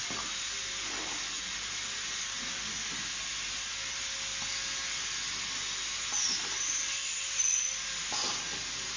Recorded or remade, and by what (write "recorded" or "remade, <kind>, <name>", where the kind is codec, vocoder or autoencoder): recorded